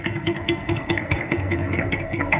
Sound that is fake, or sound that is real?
fake